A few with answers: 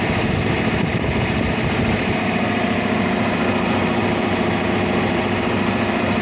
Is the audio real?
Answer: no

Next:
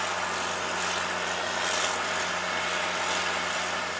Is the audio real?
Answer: yes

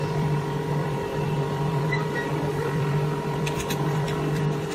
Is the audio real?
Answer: no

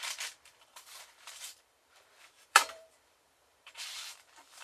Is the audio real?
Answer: no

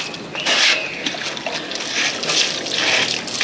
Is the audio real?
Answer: yes